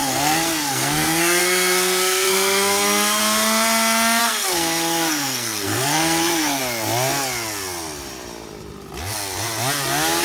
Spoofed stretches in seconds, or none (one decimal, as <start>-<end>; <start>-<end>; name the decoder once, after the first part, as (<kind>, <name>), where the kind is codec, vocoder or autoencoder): 0.0-3.2 (codec, SNAC); 4.2-6.6